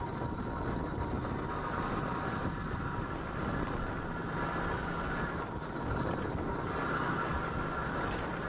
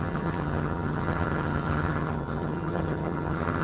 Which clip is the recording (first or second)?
first